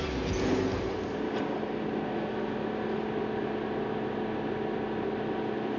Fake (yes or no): no